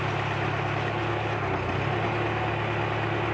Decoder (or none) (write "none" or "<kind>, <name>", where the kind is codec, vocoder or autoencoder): none